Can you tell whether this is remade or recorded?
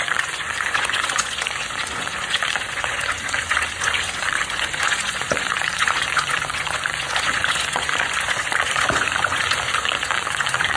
remade